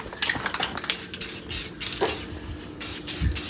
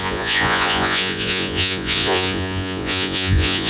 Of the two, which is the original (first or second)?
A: first